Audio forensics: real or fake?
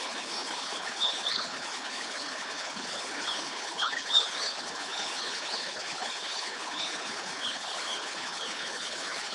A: fake